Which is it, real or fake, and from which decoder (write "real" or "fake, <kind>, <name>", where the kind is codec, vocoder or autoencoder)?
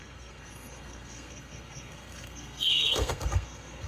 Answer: fake, codec, SNAC